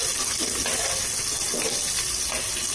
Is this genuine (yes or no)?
yes